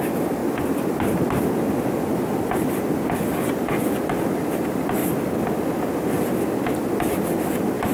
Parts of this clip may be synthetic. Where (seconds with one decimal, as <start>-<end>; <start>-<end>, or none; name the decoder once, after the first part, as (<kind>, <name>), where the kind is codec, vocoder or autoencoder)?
none